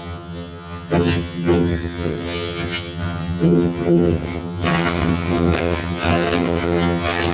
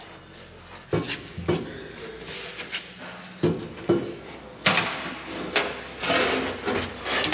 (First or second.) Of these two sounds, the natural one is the second